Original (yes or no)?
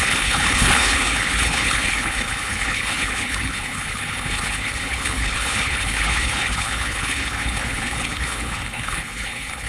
no